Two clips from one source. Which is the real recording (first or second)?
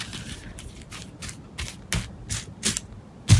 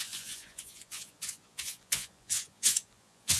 first